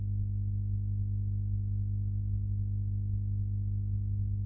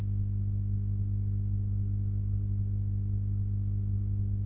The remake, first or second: second